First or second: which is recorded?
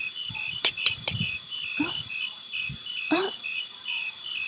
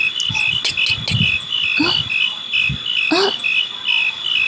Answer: second